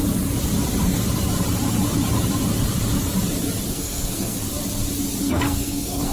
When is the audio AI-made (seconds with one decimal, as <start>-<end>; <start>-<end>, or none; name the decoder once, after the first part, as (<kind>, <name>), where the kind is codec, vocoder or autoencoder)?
3.7-4.5 (codec, SNAC); 5.2-6.1